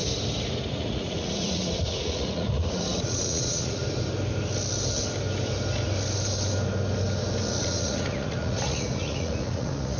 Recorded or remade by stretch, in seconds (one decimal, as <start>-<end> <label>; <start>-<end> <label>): 0.0-0.7 recorded; 0.7-3.8 remade; 3.8-7.6 recorded; 7.6-10.0 remade